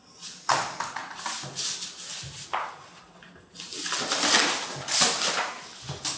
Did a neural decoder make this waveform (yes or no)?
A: no